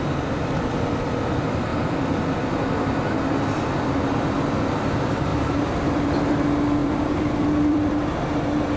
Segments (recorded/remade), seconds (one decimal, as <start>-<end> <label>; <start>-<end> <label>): 0.0-1.7 recorded; 1.7-2.4 remade; 2.4-6.8 recorded; 6.8-8.8 remade